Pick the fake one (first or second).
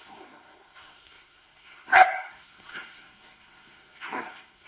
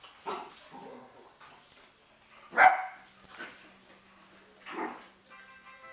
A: first